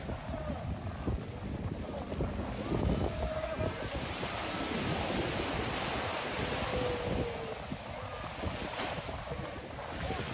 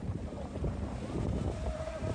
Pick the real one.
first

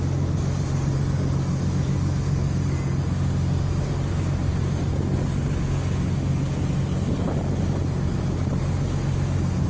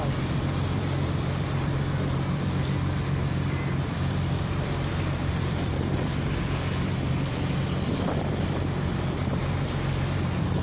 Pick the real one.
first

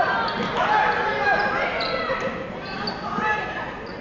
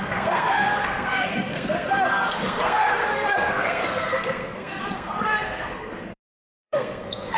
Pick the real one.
first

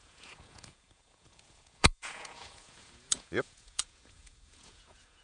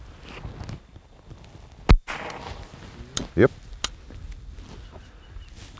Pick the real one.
second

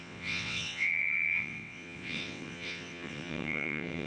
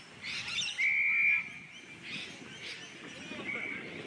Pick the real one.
second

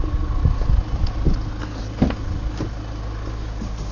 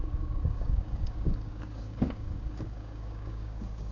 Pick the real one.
first